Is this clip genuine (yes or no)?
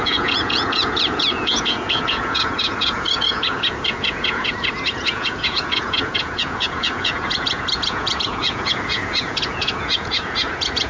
no